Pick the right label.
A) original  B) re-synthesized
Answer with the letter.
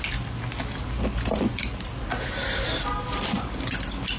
A